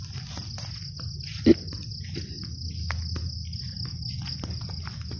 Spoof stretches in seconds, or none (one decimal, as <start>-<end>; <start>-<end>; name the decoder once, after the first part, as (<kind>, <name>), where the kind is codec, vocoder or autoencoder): none